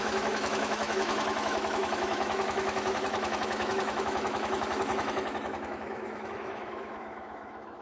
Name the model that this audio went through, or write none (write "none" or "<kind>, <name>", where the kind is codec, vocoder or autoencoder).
autoencoder, DAC-VAE